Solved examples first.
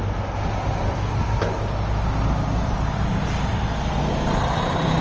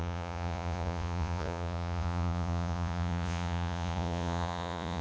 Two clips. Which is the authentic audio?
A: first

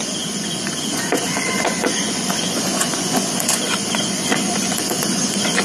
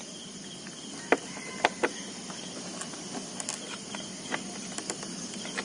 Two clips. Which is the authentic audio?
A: second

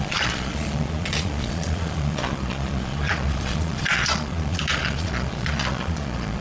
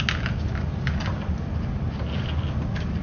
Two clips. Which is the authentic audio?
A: second